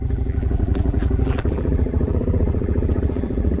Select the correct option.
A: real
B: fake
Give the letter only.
B